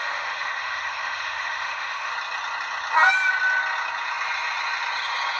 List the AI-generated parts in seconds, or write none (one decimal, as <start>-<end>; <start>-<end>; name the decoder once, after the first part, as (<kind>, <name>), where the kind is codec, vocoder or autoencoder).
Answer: 0.0-2.1 (autoencoder, DAC-VAE)